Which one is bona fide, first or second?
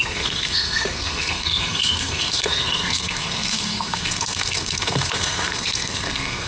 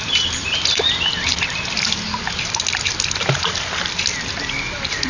second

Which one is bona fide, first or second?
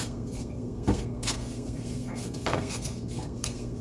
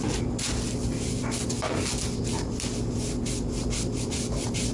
second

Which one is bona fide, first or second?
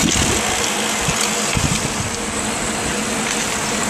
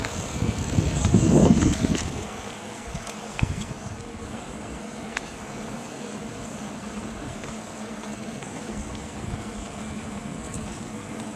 first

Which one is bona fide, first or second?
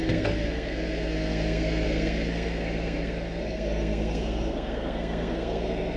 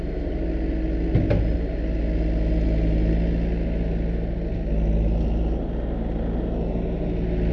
second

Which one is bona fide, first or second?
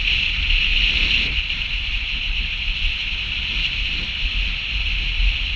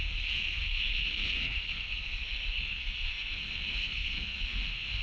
first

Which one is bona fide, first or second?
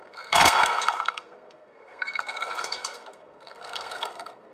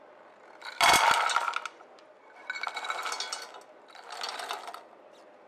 second